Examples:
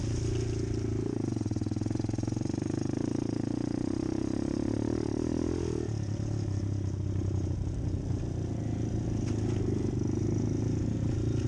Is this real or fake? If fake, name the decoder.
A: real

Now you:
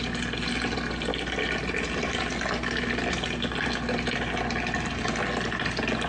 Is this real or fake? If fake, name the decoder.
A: real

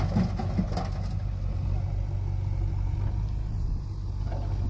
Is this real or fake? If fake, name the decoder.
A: real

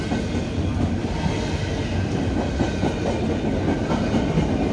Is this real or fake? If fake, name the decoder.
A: real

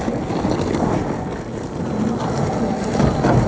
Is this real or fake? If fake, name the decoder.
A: real